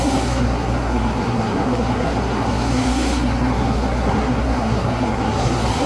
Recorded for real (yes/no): no